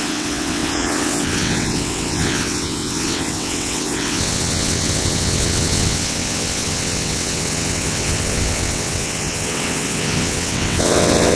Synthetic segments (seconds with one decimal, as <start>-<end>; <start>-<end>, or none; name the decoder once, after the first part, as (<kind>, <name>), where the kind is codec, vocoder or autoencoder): 0.0-11.4 (vocoder, WaveNeXt)